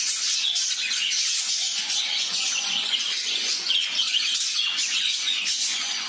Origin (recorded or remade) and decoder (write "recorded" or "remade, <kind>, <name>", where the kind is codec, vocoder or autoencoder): remade, vocoder, Vocos